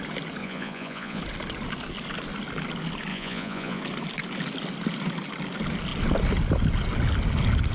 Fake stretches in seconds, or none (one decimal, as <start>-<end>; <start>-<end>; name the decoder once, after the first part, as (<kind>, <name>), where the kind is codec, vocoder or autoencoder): 0.4-1.2 (vocoder, Vocos); 3.1-3.8